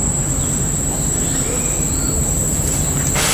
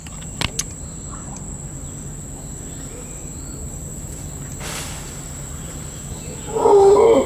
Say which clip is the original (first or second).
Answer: second